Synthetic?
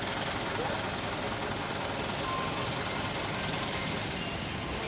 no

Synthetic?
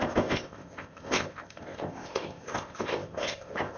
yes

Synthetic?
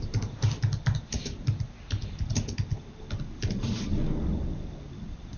no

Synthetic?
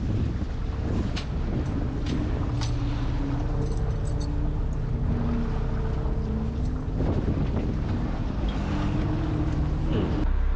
no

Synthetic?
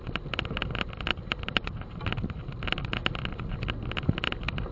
no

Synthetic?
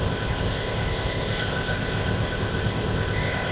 yes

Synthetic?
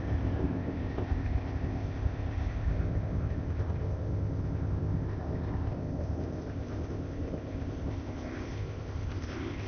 yes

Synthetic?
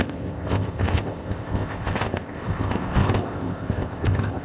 yes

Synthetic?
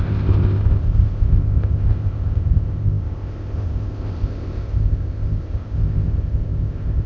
yes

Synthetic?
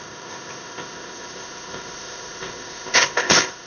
yes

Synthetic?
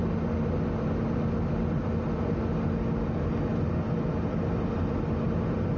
no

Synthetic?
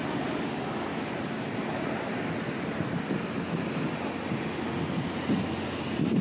no